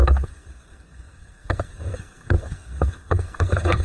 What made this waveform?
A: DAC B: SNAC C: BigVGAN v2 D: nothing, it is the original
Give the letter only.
B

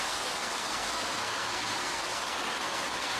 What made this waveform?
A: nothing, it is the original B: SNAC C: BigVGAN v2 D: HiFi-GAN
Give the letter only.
B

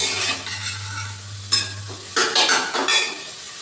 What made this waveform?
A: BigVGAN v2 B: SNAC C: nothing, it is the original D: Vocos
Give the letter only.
C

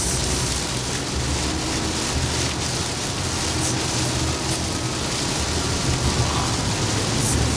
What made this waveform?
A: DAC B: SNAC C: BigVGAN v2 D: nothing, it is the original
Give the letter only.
D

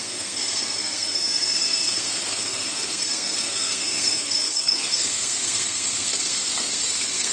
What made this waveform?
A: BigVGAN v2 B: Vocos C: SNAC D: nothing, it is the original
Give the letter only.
C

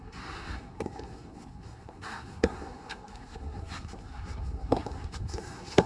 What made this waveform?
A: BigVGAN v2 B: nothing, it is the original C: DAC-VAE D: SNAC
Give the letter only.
D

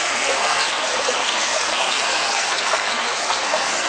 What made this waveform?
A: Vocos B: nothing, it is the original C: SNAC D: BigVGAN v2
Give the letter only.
C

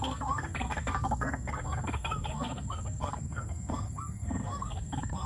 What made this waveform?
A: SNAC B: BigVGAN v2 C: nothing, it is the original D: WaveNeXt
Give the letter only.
A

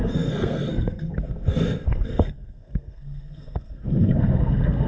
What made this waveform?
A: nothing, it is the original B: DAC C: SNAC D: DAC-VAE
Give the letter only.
C